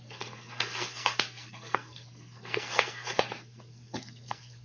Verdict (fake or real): fake